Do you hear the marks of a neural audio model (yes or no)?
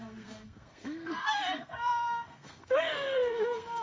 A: yes